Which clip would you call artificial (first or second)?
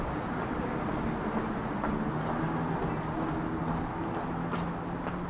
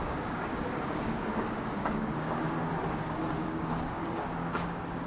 second